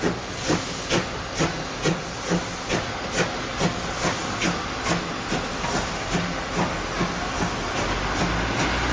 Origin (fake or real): real